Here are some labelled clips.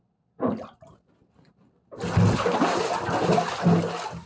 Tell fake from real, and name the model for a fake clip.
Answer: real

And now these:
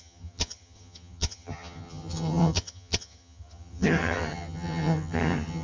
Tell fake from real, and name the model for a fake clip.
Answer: fake, vocoder, HiFi-GAN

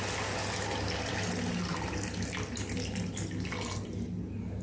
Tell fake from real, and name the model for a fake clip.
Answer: real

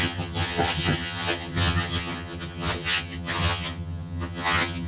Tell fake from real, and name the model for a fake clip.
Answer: fake, vocoder, HiFi-GAN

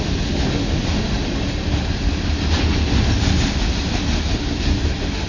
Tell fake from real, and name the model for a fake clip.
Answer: real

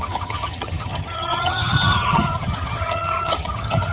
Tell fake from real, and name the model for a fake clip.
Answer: fake, vocoder, HiFi-GAN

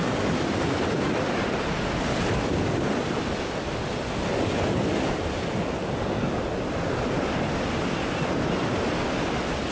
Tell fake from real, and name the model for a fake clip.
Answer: real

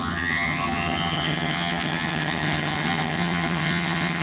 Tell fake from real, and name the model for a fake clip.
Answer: fake, vocoder, HiFi-GAN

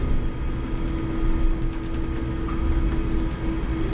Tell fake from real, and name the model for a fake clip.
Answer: real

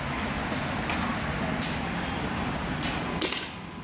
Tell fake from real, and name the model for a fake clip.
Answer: real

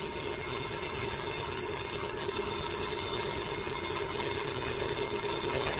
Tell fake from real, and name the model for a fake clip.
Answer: fake, vocoder, HiFi-GAN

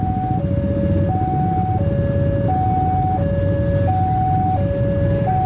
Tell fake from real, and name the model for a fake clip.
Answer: real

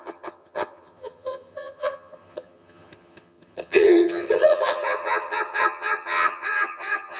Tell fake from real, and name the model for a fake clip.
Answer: fake, vocoder, HiFi-GAN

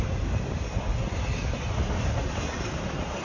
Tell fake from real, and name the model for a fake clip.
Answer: real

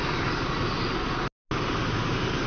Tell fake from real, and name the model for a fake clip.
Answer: real